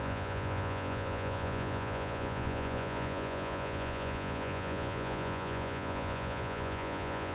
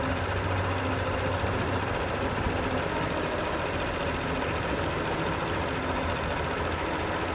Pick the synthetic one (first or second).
first